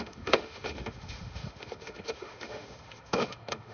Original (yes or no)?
no